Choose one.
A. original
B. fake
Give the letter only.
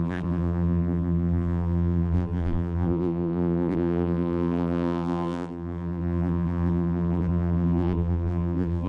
B